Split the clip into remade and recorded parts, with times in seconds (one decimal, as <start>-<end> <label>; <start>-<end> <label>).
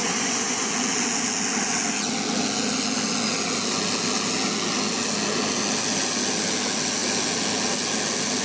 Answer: 0.0-0.7 remade; 0.7-8.4 recorded